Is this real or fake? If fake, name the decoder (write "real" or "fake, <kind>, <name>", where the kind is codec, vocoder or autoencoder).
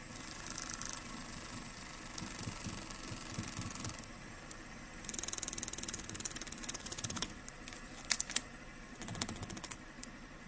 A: real